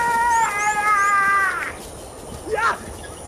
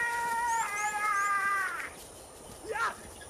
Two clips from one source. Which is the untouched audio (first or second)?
first